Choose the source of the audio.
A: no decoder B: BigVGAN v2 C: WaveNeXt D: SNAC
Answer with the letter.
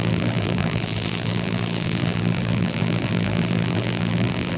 B